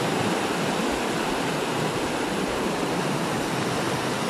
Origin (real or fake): real